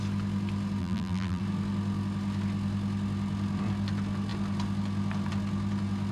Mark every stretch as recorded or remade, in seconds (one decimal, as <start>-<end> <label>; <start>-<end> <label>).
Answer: 0.0-0.8 recorded; 0.8-1.4 remade; 1.4-6.1 recorded